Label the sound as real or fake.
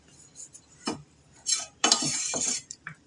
fake